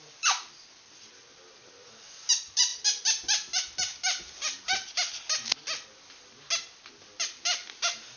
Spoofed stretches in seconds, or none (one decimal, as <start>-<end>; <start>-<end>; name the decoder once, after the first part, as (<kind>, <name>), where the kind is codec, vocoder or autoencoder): none